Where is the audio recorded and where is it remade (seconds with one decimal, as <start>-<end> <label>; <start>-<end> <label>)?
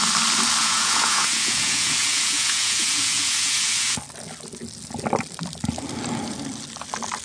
0.0-0.6 recorded; 0.6-4.0 remade; 4.0-7.2 recorded